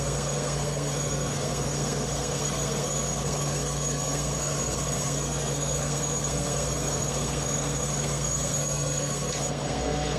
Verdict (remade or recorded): remade